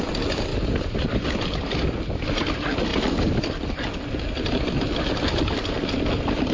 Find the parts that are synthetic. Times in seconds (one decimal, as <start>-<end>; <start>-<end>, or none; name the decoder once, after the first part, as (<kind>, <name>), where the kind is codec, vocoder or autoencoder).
none